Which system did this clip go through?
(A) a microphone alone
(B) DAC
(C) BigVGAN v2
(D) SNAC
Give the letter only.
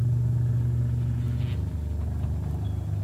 A